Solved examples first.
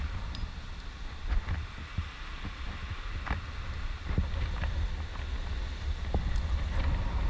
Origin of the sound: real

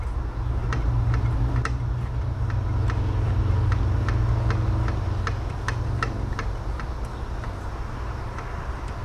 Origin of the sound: real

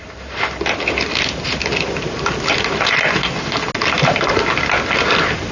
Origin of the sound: real